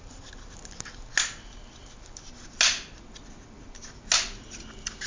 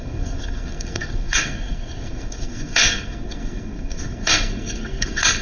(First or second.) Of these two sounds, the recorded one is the first